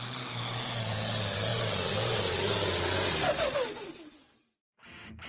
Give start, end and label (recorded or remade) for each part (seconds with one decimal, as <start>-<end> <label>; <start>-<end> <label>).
0.0-5.3 recorded